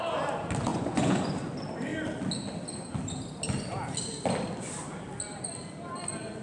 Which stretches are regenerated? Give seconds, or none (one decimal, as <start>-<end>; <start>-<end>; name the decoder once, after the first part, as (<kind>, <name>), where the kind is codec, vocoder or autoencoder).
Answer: 0.7-1.3 (vocoder, Vocos)